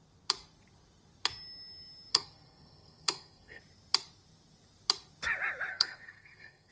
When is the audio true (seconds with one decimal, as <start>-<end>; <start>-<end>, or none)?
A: 0.0-2.1; 3.6-5.7